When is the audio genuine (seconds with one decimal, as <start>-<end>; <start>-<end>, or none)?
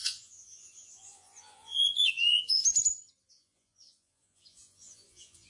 2.6-3.3